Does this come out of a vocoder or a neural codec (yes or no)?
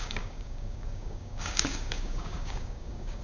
yes